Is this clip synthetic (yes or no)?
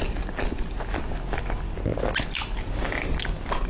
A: no